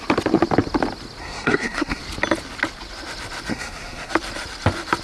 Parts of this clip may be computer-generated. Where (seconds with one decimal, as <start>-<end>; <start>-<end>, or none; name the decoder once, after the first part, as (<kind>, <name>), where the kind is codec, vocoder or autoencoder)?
1.2-2.0 (codec, SNAC); 3.5-4.1